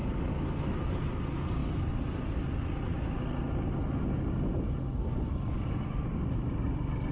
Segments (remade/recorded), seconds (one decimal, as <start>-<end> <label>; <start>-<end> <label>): 0.0-7.1 recorded